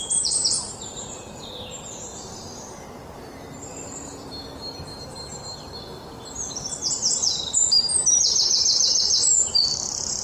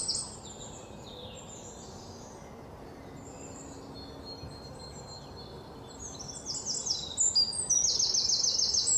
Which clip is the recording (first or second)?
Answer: second